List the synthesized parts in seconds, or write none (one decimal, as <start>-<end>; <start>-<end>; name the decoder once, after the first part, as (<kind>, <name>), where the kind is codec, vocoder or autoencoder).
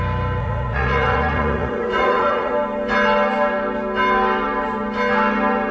0.4-2.5 (vocoder, Vocos)